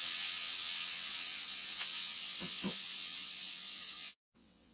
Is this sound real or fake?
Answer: fake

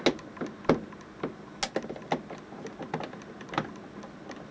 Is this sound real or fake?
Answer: real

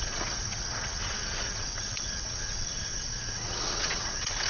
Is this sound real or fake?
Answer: fake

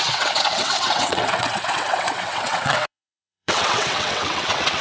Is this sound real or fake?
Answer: fake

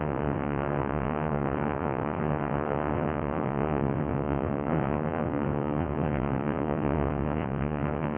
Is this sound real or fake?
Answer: fake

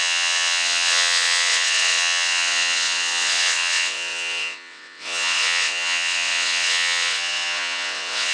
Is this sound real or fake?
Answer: fake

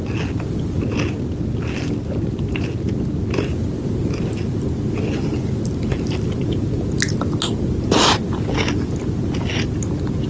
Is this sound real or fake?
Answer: real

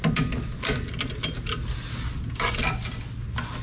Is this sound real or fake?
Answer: real